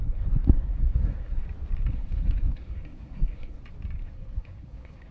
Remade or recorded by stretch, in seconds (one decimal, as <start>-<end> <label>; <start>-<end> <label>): 0.0-1.4 remade; 1.4-1.9 recorded; 1.9-3.6 remade; 3.6-4.0 recorded; 4.0-5.1 remade

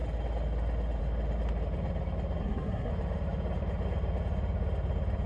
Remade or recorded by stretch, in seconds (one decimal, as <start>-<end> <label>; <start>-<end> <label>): 0.0-2.4 recorded; 2.4-2.9 remade; 2.9-5.3 recorded

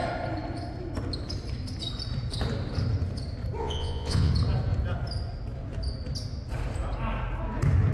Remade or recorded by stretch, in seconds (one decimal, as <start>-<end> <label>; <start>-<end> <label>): 0.0-3.6 recorded; 3.6-4.3 remade; 4.3-7.9 recorded